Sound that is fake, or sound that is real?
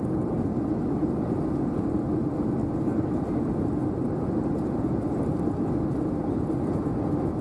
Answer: real